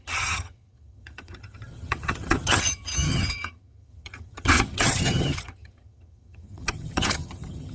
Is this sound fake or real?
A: fake